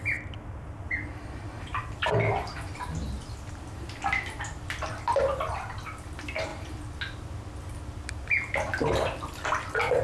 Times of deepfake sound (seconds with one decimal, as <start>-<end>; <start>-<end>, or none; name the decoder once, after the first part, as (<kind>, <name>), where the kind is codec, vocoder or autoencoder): none